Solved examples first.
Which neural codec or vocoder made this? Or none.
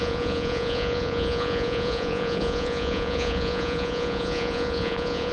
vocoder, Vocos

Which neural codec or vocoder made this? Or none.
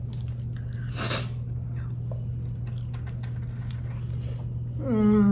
none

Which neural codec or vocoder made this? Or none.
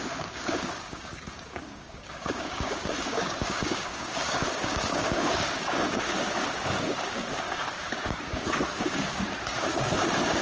codec, DAC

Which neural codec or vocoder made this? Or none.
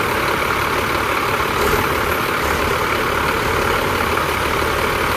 none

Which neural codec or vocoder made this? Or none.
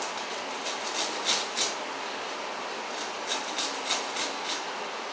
none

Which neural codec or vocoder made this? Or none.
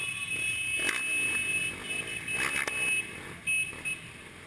none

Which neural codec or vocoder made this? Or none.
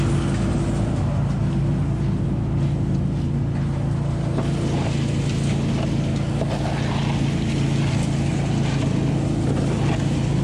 none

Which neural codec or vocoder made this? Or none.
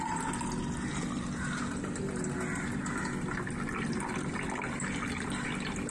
none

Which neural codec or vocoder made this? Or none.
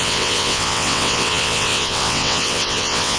vocoder, WaveNeXt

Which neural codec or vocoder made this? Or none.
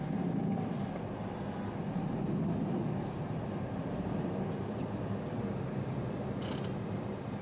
vocoder, BigVGAN v2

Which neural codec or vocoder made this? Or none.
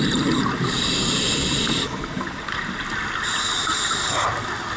none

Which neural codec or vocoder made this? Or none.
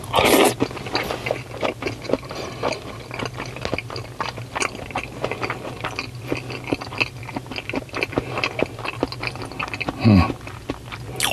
none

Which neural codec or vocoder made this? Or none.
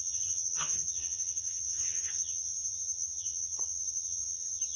vocoder, HiFi-GAN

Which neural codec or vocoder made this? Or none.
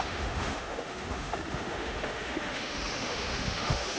autoencoder, DAC-VAE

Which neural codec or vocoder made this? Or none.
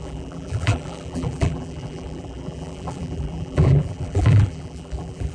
vocoder, BigVGAN v2